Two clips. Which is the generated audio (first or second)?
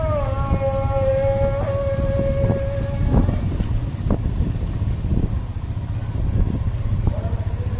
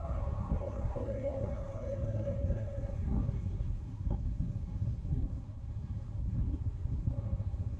second